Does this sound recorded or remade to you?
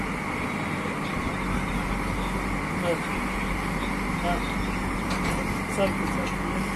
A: recorded